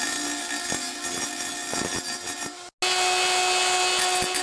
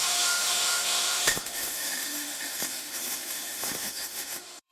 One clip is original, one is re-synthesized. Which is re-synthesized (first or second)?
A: second